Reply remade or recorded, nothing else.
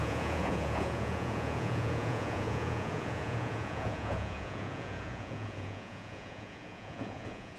remade